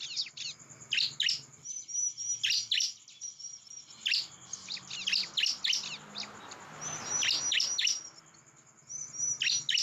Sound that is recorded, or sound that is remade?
recorded